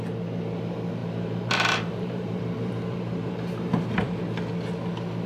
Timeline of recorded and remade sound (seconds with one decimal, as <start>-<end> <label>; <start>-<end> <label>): 0.0-1.0 recorded; 1.0-4.2 remade; 4.2-5.3 recorded